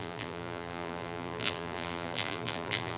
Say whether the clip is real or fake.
fake